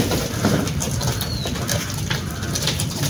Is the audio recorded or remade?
recorded